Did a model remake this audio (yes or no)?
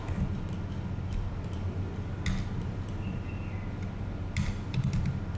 no